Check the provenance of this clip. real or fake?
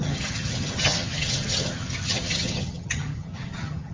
fake